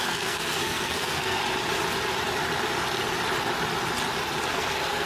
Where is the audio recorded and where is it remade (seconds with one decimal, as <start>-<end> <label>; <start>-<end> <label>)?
0.0-1.4 remade; 1.4-4.5 recorded; 4.5-5.1 remade